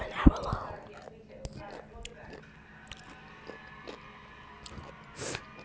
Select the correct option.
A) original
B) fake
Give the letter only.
A